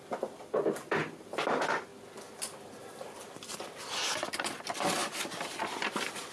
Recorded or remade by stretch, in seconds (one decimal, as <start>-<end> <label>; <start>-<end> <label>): 0.0-6.3 recorded